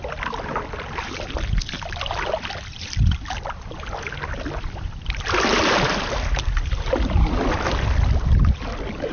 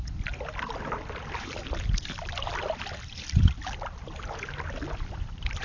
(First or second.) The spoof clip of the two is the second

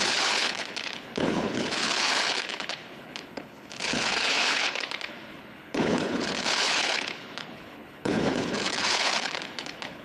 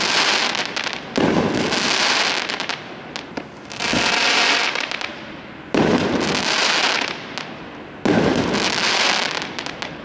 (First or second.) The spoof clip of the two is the first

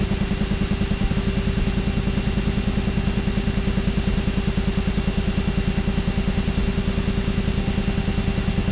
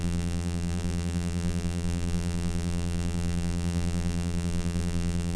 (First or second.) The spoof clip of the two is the second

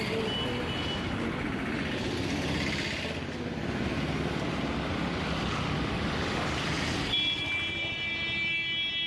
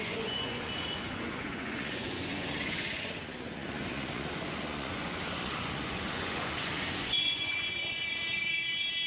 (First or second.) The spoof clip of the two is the second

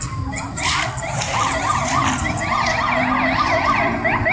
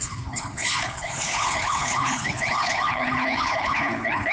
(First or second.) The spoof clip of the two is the second